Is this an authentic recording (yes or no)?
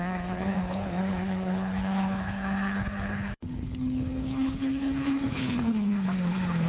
no